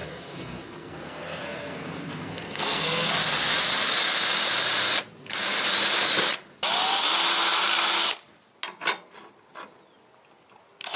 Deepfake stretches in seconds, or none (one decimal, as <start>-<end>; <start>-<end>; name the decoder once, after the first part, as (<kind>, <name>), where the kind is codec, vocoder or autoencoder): 0.0-3.1 (codec, SNAC)